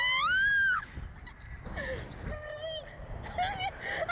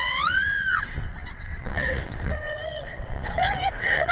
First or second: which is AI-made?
second